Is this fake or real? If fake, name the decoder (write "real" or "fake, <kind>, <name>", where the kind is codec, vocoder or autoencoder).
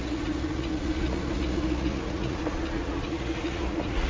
fake, vocoder, Vocos